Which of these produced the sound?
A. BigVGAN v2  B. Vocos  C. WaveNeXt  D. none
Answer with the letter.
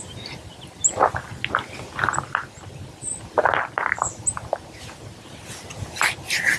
D